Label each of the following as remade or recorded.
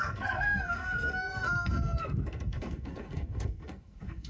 remade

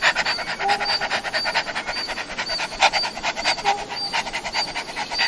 recorded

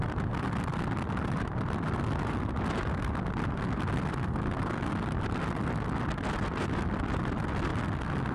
recorded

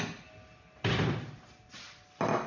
recorded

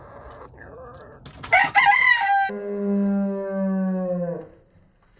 recorded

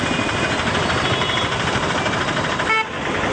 recorded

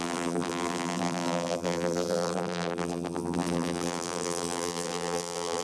remade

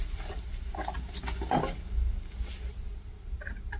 remade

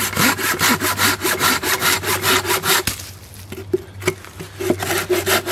recorded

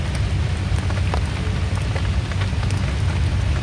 recorded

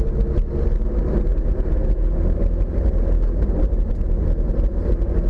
recorded